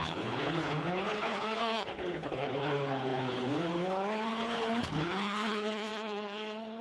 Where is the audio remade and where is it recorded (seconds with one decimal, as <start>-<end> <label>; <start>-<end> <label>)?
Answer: 0.0-6.8 remade